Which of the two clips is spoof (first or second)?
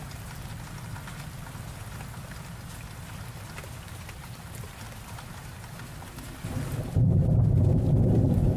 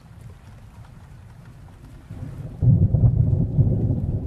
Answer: second